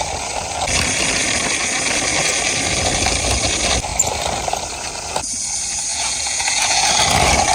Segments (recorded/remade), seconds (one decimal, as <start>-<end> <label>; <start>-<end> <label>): 0.0-5.9 recorded; 5.9-6.9 remade; 6.9-7.5 recorded